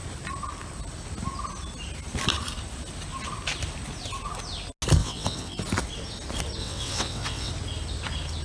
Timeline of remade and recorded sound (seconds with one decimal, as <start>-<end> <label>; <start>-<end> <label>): 0.0-5.0 recorded; 5.0-5.6 remade; 5.6-6.6 recorded; 6.6-7.5 remade; 7.5-8.4 recorded